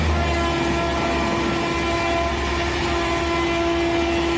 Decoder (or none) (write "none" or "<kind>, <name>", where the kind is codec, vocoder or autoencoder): none